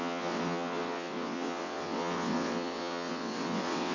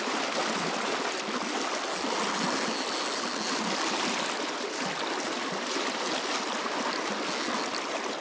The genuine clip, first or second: second